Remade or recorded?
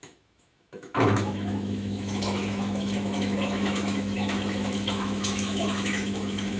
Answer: remade